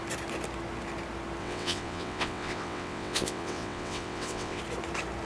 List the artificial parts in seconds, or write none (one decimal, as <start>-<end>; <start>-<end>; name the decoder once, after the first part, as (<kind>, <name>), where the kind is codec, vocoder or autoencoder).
1.4-4.6 (vocoder, WaveNeXt)